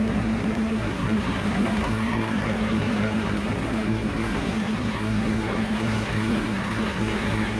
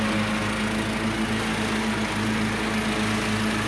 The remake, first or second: first